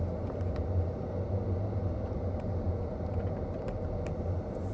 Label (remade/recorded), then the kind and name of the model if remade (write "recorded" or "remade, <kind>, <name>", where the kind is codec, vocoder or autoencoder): recorded